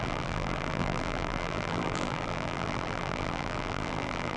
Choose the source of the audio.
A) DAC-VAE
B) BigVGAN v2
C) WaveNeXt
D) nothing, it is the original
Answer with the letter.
B